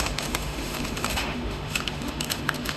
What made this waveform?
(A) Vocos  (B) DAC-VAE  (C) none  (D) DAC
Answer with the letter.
B